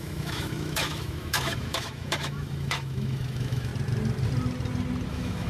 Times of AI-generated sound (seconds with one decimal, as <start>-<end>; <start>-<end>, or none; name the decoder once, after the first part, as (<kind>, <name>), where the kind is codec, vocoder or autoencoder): 0.0-3.7 (autoencoder, DAC-VAE); 5.1-5.5